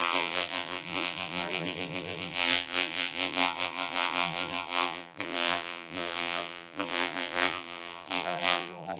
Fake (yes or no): yes